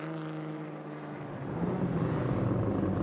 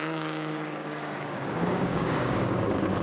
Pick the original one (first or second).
first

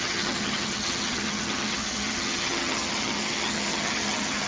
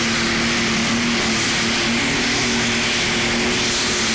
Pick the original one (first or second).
second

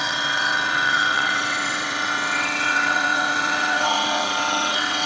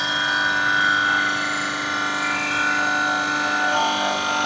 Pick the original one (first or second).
second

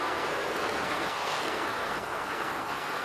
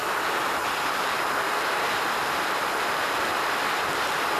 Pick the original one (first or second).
second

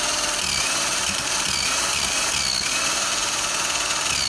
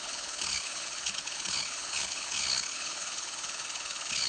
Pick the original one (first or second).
first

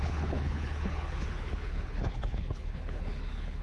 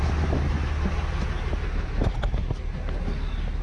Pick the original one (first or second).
second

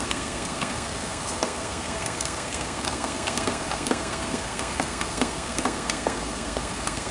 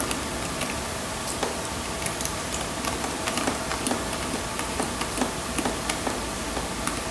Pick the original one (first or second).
second